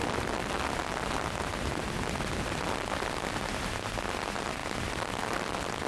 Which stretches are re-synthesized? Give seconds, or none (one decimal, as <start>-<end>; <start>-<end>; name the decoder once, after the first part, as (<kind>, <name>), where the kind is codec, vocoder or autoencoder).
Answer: none